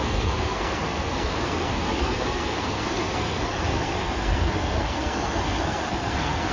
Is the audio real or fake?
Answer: fake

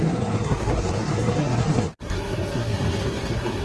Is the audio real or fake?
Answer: fake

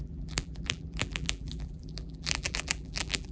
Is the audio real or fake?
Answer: fake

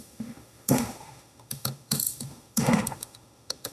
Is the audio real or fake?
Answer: fake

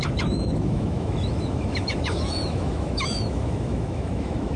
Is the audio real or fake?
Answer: fake